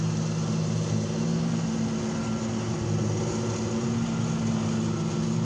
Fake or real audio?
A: real